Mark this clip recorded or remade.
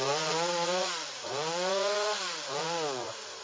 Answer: remade